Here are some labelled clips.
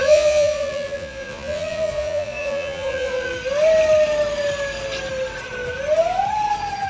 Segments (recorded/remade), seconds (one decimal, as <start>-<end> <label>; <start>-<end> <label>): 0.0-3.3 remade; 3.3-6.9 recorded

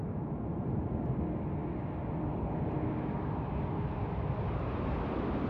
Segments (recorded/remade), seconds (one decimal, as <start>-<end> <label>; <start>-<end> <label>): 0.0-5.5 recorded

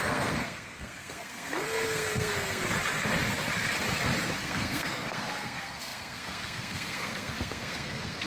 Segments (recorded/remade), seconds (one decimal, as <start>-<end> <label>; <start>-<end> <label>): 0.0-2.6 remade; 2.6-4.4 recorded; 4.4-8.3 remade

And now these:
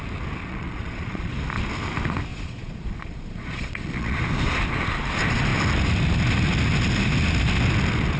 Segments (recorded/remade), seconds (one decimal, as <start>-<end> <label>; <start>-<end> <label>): 0.0-0.4 recorded; 0.4-1.3 remade; 1.3-2.3 recorded; 2.3-4.2 remade; 4.2-8.2 recorded

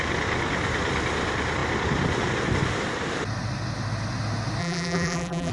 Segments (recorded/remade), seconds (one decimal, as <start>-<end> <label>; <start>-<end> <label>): 0.0-4.6 recorded; 4.6-5.5 remade

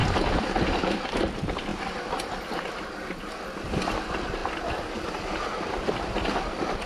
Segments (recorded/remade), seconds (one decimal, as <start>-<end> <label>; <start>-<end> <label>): 0.0-0.6 remade; 0.6-1.7 recorded; 1.7-2.5 remade; 2.5-4.4 recorded; 4.4-5.2 remade; 5.2-6.9 recorded